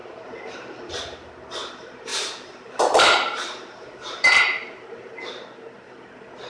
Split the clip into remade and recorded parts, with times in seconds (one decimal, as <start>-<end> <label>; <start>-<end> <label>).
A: 0.0-0.8 remade; 0.8-2.1 recorded; 2.1-5.1 remade; 5.1-6.5 recorded